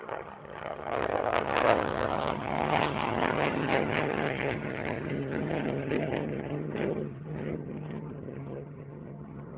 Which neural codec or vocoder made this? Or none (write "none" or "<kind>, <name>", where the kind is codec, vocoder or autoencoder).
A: vocoder, HiFi-GAN